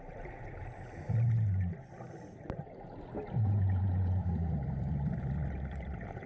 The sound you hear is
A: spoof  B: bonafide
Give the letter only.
B